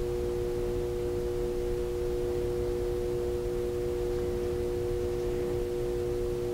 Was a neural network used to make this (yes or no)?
no